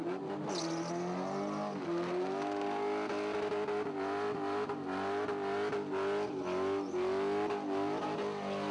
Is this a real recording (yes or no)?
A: yes